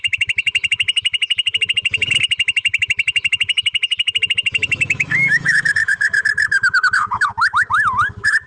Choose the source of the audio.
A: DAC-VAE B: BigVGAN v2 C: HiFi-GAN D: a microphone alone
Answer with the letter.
A